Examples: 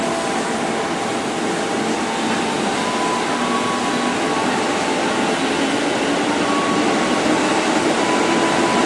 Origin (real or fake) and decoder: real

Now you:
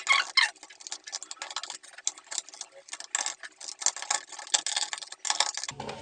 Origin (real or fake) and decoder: real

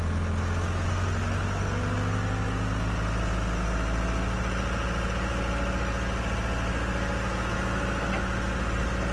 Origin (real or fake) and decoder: real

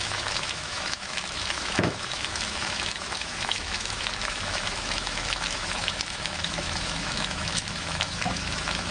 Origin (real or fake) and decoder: fake, autoencoder, DAC-VAE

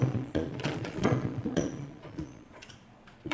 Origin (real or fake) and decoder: fake, vocoder, Vocos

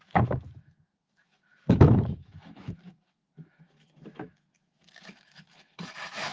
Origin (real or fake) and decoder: fake, autoencoder, DAC-VAE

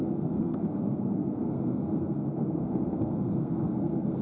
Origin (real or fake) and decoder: fake, codec, SNAC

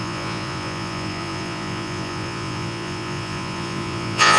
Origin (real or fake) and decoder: fake, vocoder, Vocos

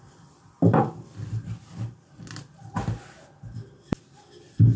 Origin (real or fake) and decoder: real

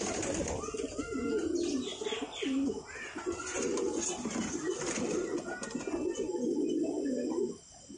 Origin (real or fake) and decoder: real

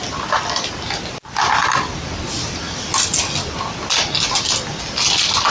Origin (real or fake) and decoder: real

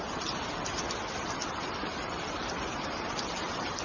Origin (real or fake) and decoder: real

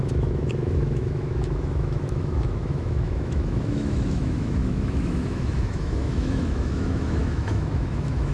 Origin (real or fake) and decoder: fake, autoencoder, DAC-VAE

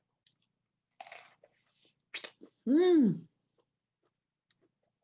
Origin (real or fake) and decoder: real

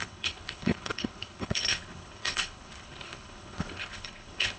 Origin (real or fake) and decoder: fake, codec, HILCodec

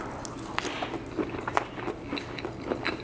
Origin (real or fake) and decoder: real